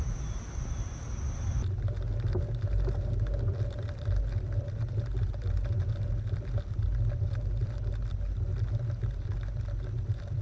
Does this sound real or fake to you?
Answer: real